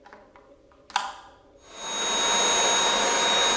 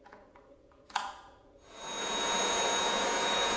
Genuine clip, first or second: first